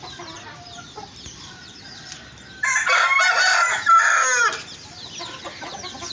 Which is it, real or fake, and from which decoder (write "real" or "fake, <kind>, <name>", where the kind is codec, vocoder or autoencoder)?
real